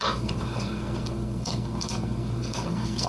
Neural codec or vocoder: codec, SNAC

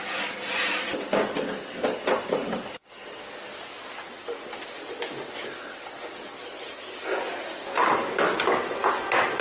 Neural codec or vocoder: none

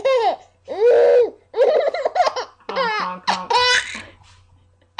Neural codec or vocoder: none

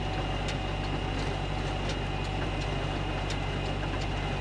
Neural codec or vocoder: none